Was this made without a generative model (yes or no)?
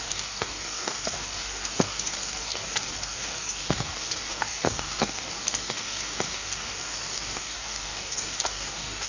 no